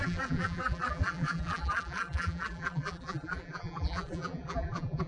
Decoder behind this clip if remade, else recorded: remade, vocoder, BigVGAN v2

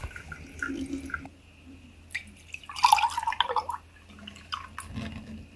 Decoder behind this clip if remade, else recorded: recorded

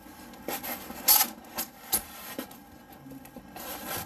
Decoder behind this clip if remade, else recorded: recorded